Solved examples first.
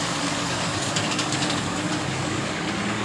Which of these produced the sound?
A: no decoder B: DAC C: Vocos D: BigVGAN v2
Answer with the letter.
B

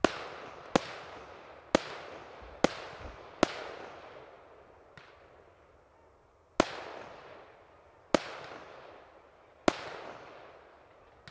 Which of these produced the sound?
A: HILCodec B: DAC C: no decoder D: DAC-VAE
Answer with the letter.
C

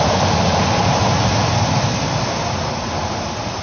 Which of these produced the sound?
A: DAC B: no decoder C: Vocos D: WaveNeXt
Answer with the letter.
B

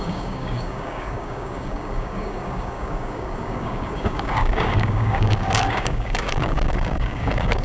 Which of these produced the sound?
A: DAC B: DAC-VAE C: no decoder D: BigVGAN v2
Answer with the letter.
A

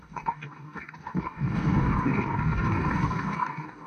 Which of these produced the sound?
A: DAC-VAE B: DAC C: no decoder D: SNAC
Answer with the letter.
B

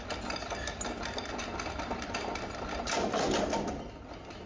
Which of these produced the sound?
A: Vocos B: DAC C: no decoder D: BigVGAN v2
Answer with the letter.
C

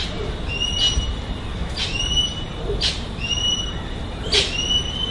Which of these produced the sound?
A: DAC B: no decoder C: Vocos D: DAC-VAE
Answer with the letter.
B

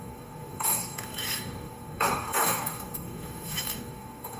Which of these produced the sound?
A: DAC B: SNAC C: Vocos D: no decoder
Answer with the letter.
A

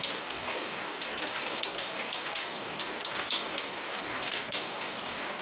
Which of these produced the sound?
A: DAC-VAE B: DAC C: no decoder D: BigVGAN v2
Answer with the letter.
B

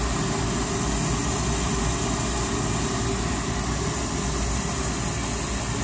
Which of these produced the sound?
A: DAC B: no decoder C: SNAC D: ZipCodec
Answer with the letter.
B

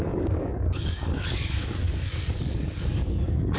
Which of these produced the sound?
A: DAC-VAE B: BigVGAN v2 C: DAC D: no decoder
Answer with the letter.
C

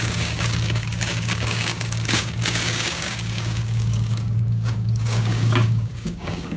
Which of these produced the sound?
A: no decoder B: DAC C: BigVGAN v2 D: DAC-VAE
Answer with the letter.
B